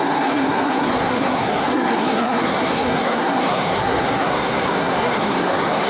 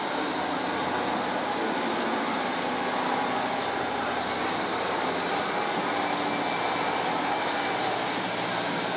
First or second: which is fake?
first